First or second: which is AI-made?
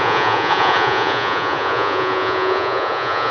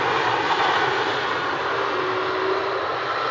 first